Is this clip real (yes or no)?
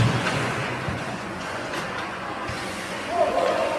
no